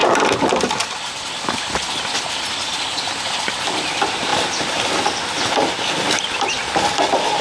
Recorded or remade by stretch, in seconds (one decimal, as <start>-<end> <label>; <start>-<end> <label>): 0.0-7.4 recorded